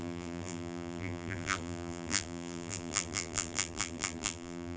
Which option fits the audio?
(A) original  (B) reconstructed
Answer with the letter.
B